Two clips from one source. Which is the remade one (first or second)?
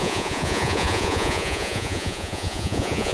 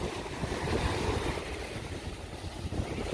first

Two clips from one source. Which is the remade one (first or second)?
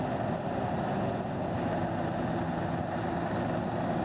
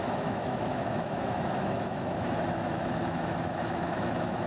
second